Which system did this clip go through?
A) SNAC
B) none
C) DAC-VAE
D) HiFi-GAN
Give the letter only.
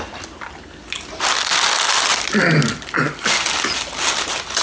B